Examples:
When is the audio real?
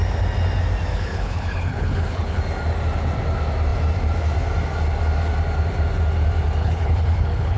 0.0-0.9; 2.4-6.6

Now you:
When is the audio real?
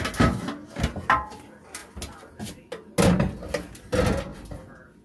0.0-5.0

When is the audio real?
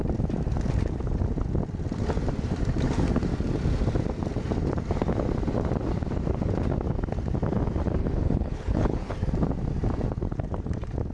0.0-8.0; 9.1-11.1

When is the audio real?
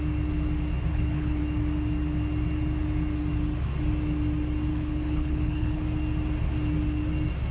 0.0-0.9; 1.4-4.7; 5.8-7.5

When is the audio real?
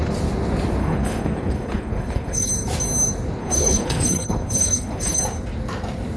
0.0-0.8; 2.5-3.4; 5.2-6.2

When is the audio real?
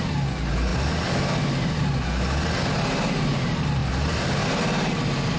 0.0-5.4